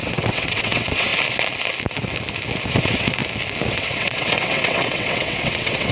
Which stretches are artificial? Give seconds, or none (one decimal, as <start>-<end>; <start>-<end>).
0.0-1.1; 2.7-3.2; 3.7-5.9